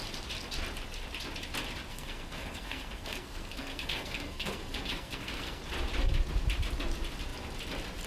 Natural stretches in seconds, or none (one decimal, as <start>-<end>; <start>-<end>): 0.0-1.9; 5.6-8.1